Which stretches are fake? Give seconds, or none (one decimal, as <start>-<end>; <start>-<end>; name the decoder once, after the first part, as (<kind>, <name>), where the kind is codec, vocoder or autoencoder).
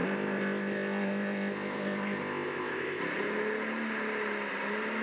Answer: 0.0-3.0 (codec, ZipCodec)